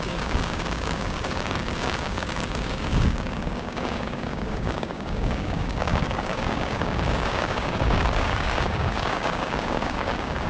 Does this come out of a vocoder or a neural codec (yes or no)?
yes